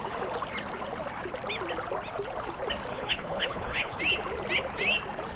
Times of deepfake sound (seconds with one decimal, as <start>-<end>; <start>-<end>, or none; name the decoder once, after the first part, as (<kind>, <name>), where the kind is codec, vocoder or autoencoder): 2.9-4.0 (codec, HILCodec)